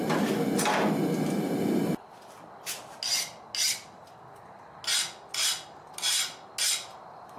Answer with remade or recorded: recorded